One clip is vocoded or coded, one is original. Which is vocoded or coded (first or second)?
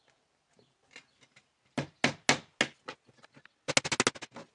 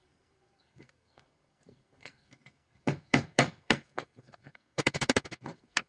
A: second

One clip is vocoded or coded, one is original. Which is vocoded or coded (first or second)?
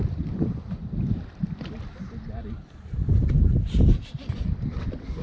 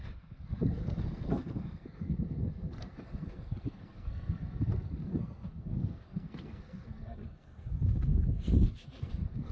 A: second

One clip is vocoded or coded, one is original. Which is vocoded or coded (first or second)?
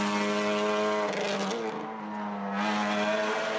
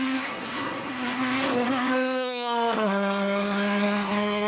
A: second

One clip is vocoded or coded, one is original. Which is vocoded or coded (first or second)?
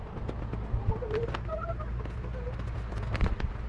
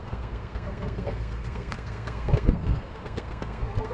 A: second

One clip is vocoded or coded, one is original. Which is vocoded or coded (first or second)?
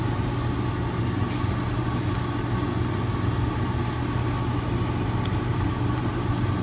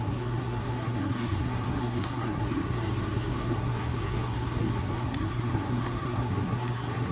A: second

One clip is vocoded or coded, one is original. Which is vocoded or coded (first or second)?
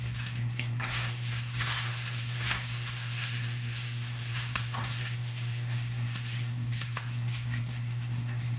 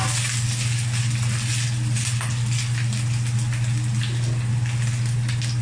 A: first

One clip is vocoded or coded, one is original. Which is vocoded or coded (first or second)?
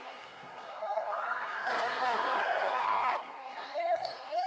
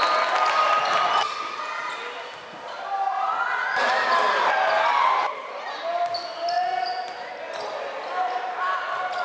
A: first